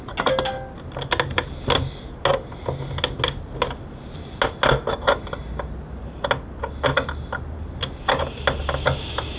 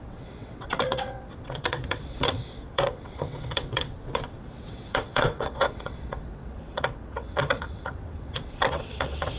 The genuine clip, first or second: first